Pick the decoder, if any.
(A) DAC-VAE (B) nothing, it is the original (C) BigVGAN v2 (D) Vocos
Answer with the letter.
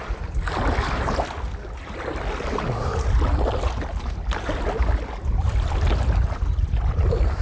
B